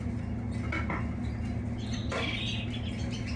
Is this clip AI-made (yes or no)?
no